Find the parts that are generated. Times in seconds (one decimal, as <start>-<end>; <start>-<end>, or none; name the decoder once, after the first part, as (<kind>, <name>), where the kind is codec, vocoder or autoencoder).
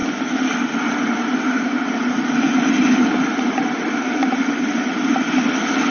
4.2-5.3 (vocoder, BigVGAN v2)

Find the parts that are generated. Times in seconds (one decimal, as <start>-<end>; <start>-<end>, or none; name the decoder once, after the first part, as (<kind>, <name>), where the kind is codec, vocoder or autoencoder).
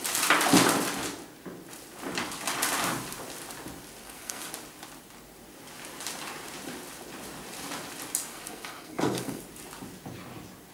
4.0-4.5 (codec, SNAC); 8.3-9.4